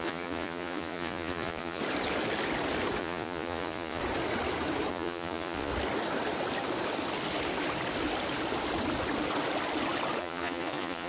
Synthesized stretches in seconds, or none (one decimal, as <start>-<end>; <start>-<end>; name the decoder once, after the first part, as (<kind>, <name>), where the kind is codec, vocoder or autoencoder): 0.0-1.8 (vocoder, Vocos); 3.0-4.0; 4.9-5.7; 10.2-11.1